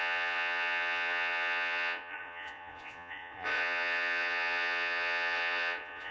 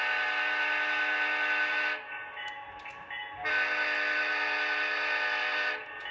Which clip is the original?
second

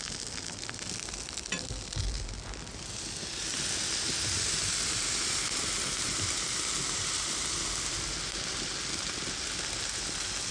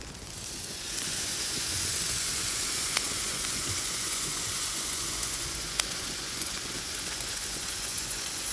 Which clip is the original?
first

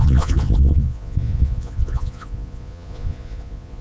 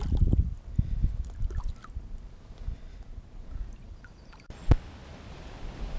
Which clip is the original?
second